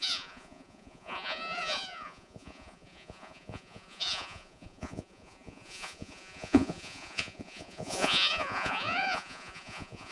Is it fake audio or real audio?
fake